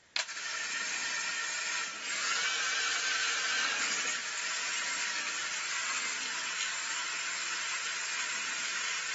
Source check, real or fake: real